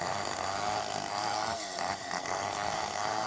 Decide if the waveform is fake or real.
fake